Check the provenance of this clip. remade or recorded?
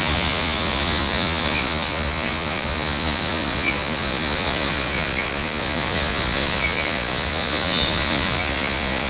remade